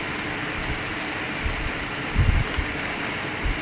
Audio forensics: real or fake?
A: real